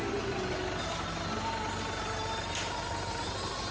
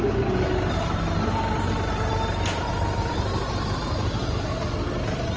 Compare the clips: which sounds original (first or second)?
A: first